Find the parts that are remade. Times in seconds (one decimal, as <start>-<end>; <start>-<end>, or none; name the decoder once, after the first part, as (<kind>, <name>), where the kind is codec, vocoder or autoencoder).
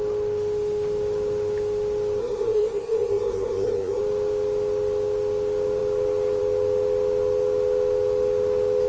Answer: 2.2-4.0 (codec, SNAC)